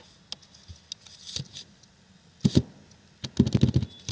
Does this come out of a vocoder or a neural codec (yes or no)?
no